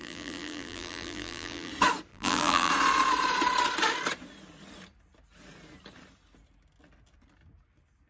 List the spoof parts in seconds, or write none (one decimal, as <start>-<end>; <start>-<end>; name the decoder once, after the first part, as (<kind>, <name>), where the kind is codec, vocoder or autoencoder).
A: 0.0-1.7 (vocoder, BigVGAN v2); 2.1-2.7